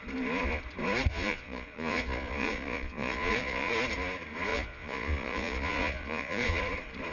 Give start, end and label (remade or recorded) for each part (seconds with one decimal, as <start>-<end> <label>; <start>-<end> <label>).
0.0-1.1 recorded; 1.1-3.7 remade; 3.7-4.5 recorded; 4.5-6.6 remade; 6.6-7.1 recorded